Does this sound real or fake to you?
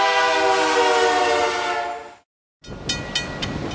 real